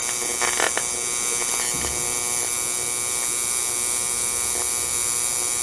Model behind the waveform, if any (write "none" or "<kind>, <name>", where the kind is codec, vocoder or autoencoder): none